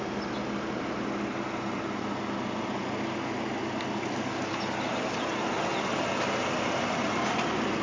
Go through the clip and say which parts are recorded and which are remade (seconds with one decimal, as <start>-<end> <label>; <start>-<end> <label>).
0.0-7.8 recorded

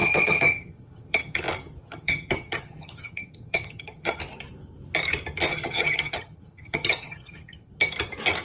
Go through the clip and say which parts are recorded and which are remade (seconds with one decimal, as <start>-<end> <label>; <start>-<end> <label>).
0.0-1.4 remade; 1.4-1.8 recorded; 1.8-4.2 remade; 4.2-5.5 recorded; 5.5-7.7 remade; 7.7-8.4 recorded

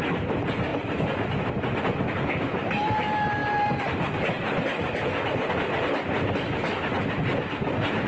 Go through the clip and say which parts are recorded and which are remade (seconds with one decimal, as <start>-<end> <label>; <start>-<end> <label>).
0.0-8.1 recorded

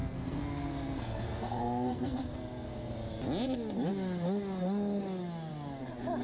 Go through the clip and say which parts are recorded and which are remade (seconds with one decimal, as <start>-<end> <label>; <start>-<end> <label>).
0.0-2.9 remade; 2.9-6.2 recorded

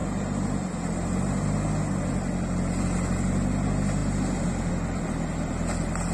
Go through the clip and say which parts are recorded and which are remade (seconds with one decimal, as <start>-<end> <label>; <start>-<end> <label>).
0.0-6.1 recorded